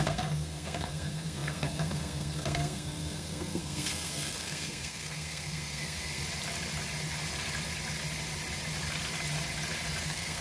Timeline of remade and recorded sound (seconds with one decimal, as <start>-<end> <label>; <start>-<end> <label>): 0.0-6.2 remade; 6.2-10.0 recorded; 10.0-10.4 remade